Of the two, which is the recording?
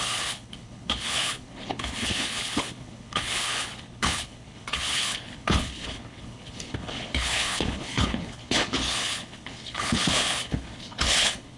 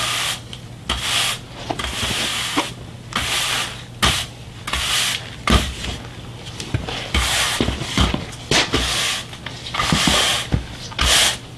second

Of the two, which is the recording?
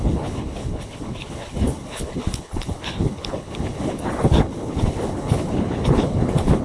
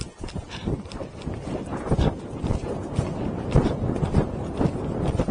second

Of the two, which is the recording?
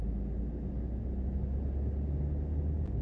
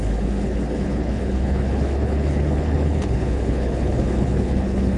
first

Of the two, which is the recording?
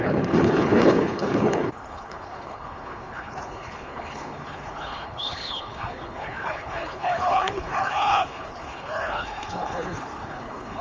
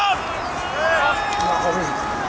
second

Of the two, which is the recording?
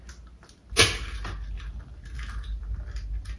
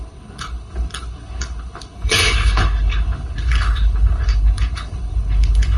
first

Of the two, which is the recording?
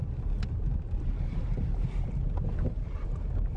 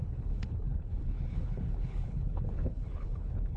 first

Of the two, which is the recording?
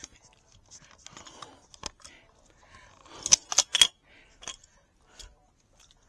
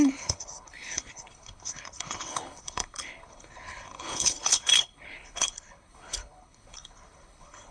first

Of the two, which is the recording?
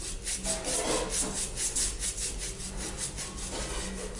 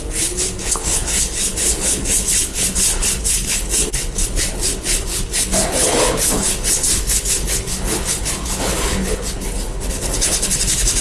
first